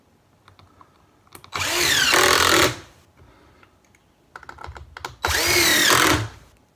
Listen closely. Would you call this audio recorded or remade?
recorded